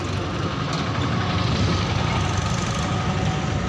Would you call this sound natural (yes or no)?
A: yes